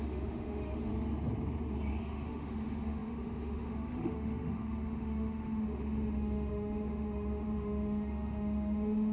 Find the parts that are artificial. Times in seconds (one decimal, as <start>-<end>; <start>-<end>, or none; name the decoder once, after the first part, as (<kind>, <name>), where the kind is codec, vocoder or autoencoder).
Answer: 0.0-0.9 (autoencoder, DAC-VAE); 2.0-9.1